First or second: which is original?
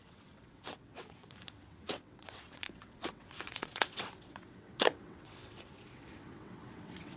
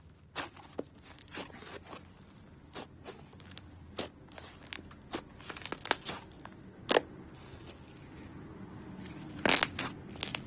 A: second